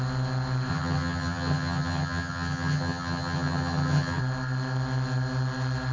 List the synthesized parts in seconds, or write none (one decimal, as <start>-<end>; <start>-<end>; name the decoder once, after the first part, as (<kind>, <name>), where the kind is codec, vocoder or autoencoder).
0.7-4.2 (vocoder, HiFi-GAN)